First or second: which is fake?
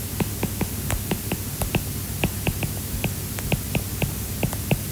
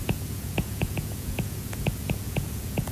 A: second